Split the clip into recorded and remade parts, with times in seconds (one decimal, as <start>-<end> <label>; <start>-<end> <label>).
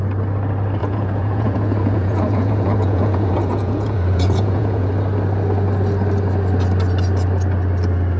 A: 0.0-0.8 recorded; 0.8-4.9 remade; 4.9-8.2 recorded